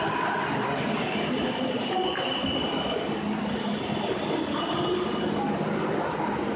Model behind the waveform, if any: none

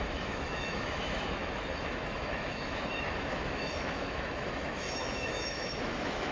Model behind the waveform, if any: autoencoder, DAC-VAE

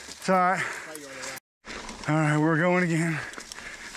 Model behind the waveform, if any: none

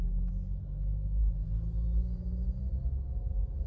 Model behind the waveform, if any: none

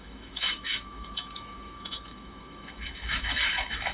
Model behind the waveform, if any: autoencoder, DAC-VAE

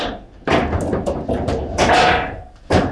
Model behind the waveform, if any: none